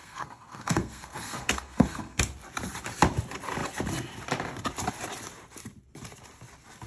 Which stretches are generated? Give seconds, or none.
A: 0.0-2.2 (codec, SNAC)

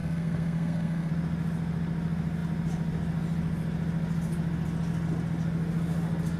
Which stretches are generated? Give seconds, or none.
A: 0.0-1.1 (codec, SNAC)

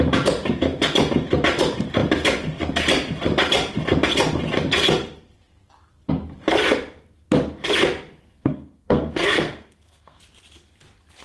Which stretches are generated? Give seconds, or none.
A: 8.3-10.2 (codec, SNAC)

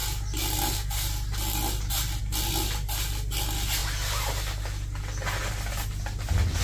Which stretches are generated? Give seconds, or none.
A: none

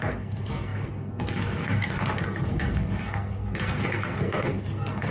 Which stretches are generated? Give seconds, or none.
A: 0.0-5.1 (codec, SNAC)

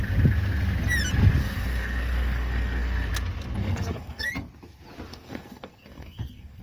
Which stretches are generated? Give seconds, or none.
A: 1.4-3.1 (codec, SNAC); 3.6-4.3; 5.1-6.6